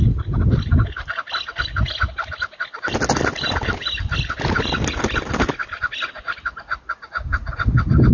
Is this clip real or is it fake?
real